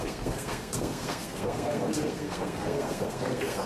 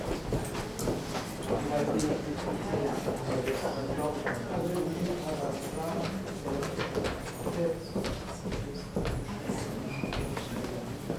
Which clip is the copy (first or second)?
first